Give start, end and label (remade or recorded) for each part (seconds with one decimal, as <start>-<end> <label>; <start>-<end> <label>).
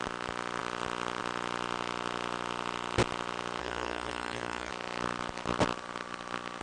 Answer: 0.0-3.6 recorded; 3.6-4.7 remade; 4.7-6.6 recorded